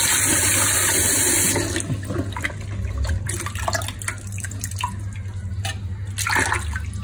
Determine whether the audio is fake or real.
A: real